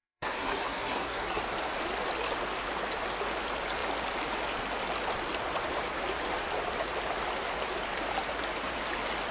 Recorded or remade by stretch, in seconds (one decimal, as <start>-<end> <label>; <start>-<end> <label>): 0.0-1.4 remade; 1.4-9.3 recorded